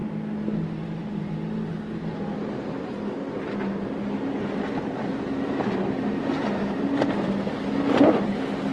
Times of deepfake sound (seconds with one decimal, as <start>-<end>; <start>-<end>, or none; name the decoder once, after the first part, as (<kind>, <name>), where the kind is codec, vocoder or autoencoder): none